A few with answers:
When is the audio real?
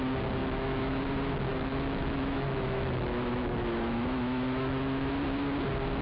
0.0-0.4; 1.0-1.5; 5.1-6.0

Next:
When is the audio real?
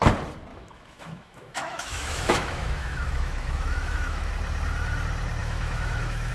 0.0-0.5; 4.3-5.4